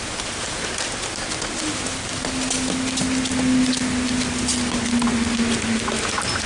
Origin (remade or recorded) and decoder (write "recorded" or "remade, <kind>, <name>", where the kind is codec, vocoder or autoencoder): recorded